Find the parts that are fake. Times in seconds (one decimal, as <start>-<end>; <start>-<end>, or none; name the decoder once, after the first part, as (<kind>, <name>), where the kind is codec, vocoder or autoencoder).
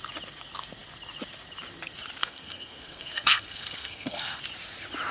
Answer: 2.2-4.4 (codec, SNAC)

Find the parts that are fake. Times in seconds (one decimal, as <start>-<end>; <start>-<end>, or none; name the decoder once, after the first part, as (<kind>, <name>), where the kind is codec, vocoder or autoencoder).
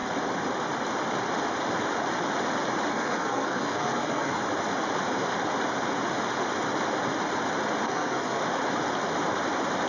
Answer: 2.9-4.4 (codec, SNAC); 7.9-8.4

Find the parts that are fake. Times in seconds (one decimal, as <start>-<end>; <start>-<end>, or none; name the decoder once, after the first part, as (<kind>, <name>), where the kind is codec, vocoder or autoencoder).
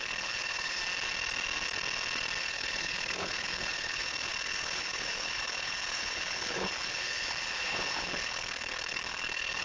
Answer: 0.0-0.8 (codec, HILCodec); 2.4-9.6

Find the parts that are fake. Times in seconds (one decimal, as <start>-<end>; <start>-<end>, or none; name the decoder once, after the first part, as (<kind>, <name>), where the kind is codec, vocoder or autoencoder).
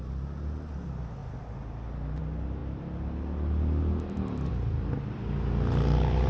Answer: none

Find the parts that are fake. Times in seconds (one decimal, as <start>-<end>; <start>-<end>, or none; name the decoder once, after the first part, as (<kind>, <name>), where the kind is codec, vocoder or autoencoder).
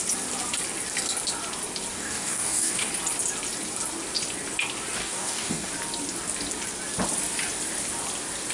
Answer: 1.9-2.9 (codec, DAC); 5.0-5.7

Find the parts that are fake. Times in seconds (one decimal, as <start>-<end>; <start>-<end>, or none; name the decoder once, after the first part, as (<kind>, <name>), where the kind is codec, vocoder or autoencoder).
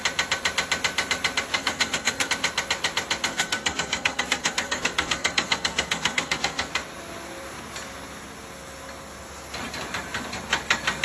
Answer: 1.5-2.3 (codec, SNAC); 3.3-6.7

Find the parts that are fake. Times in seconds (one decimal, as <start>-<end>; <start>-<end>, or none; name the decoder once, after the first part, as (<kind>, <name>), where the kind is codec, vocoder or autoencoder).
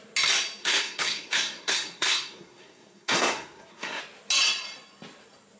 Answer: 0.6-4.0 (codec, SNAC)